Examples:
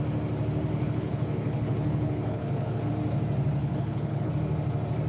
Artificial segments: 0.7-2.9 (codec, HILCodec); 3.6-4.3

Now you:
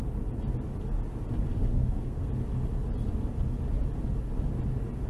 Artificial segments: 1.7-2.3 (codec, SNAC)